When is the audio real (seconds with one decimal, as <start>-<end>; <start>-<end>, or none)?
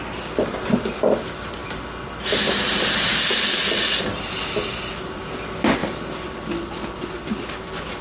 0.0-8.0